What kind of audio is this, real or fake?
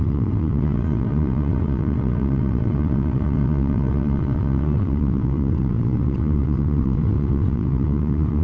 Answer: fake